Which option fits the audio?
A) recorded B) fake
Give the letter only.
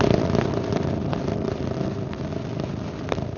A